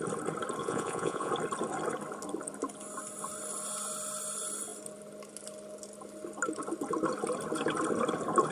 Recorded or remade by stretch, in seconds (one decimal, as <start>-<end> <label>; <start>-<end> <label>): 0.0-0.6 recorded; 0.6-1.3 remade; 1.3-8.5 recorded